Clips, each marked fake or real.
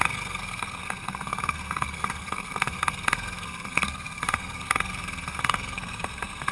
fake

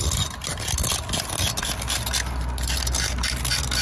real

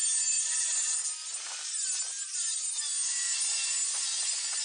real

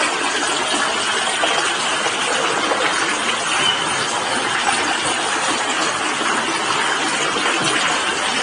real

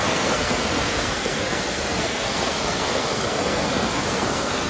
fake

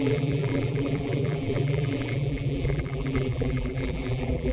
fake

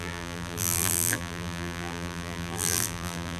fake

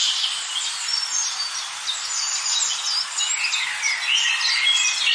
real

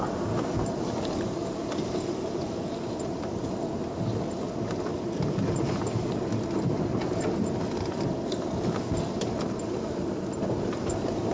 real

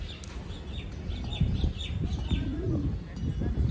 real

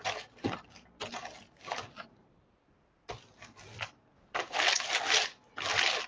real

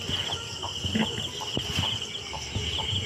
real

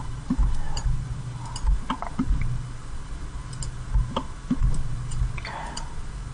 real